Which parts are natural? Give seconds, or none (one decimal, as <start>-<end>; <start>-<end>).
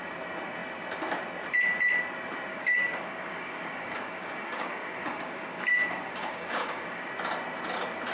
0.0-2.5; 7.1-8.1